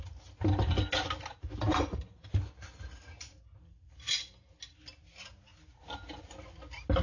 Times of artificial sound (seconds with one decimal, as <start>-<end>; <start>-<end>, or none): none